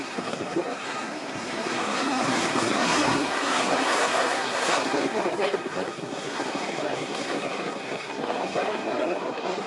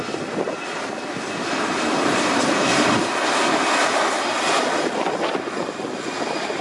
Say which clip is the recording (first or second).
second